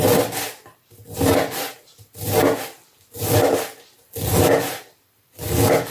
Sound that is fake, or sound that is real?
real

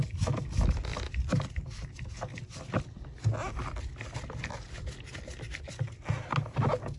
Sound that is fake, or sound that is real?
real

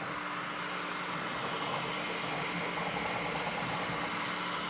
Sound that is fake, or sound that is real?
real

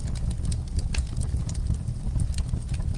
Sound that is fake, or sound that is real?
real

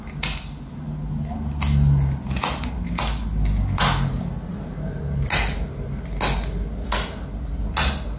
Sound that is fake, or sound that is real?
real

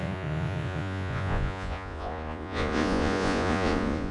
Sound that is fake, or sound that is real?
fake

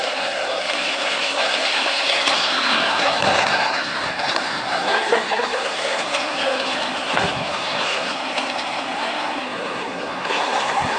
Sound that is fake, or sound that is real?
fake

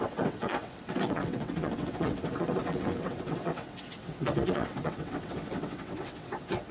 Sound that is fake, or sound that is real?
fake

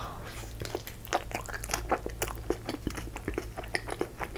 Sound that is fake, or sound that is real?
real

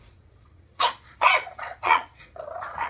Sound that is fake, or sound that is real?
fake